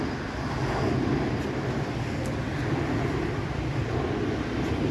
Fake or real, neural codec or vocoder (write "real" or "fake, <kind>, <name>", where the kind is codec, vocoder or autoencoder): real